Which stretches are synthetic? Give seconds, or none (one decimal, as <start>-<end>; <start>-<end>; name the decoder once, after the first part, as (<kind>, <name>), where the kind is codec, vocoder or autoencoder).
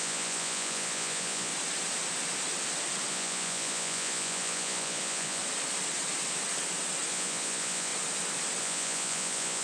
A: 0.0-1.5 (vocoder, Vocos); 3.1-5.4; 7.1-7.9; 8.6-9.6